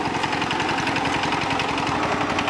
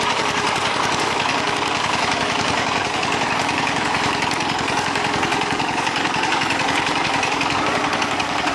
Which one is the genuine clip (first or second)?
first